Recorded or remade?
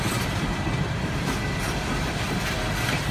recorded